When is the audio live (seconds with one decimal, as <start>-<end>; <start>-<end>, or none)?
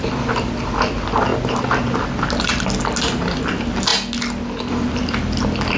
0.0-5.8